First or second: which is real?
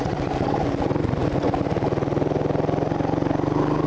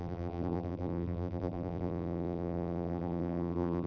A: first